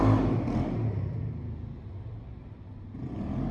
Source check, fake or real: real